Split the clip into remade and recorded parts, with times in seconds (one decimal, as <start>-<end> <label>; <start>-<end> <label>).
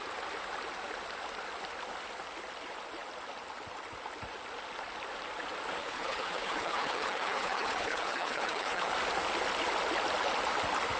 0.0-5.8 recorded; 5.8-8.9 remade; 8.9-11.0 recorded